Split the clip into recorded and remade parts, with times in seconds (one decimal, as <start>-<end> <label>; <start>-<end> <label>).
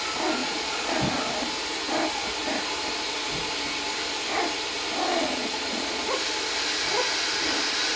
0.0-0.4 recorded; 0.4-1.0 remade; 1.0-5.1 recorded; 5.1-6.0 remade; 6.0-8.0 recorded